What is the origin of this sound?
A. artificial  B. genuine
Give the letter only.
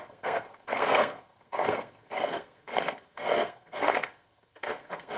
A